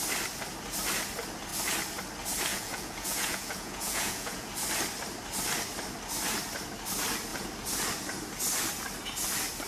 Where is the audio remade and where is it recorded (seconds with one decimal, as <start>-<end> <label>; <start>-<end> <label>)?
0.0-2.5 recorded; 2.5-4.5 remade; 4.5-9.7 recorded